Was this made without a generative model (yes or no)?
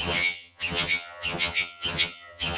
no